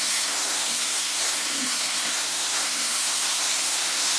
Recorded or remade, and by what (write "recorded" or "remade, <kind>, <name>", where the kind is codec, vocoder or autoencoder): remade, codec, SNAC